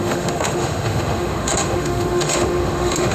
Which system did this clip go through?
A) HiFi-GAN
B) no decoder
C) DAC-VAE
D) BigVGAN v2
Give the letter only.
C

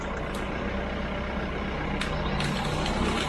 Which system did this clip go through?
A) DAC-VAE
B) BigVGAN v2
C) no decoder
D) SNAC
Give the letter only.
C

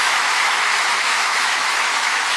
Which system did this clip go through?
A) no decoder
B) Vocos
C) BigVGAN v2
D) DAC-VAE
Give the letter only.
D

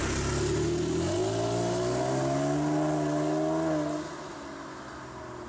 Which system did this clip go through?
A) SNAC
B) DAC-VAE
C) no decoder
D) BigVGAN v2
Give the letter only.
C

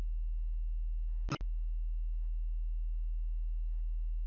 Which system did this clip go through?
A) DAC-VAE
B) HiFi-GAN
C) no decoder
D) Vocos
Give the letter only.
C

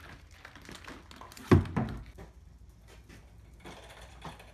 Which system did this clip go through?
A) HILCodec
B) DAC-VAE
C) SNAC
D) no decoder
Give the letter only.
D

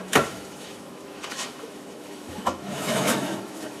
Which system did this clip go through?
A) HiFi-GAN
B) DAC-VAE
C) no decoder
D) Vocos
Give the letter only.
B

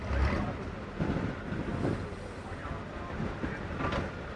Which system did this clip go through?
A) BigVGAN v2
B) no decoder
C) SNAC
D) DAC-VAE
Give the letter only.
B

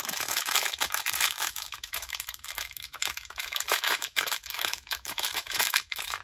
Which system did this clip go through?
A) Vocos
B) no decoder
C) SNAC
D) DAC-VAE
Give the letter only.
D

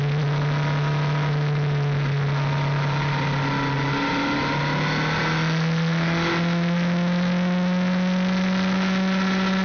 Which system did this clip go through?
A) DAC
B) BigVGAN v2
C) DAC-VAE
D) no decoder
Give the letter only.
D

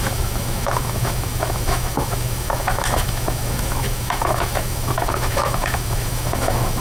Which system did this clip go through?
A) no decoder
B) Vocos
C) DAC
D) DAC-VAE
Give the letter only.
D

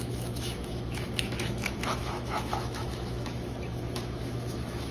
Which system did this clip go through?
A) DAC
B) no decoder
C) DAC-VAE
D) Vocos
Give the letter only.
C